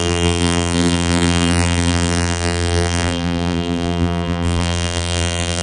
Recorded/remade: remade